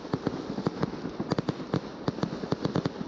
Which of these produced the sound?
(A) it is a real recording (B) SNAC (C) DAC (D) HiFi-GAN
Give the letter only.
A